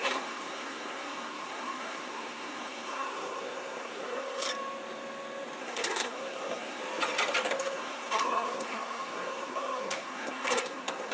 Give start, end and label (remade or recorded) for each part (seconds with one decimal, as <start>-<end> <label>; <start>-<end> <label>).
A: 0.0-4.5 remade; 4.5-5.6 recorded; 5.6-6.8 remade; 6.8-7.5 recorded; 7.5-11.1 remade